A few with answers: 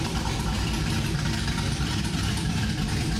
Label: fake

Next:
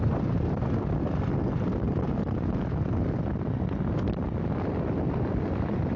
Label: real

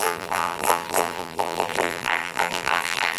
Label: fake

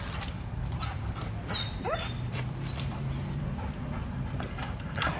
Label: fake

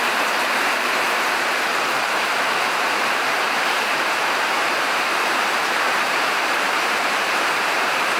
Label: fake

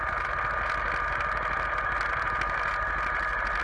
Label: real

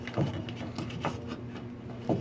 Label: real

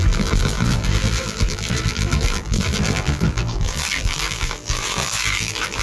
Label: fake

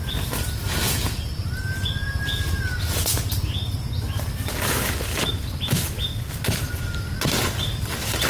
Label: real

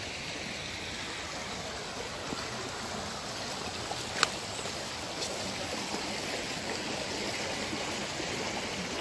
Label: real